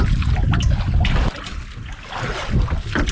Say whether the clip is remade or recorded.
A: recorded